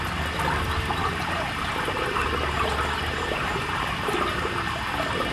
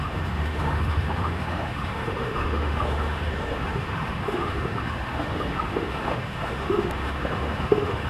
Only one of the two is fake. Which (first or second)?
second